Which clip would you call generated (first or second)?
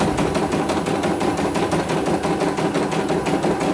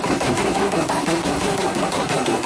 second